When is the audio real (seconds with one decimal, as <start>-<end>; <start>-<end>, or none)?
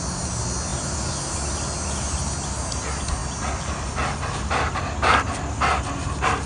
0.0-6.5